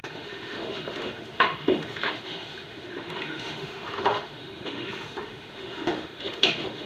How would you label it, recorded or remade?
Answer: remade